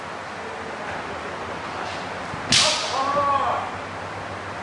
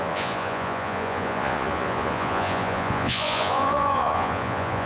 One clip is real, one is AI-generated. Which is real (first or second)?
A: first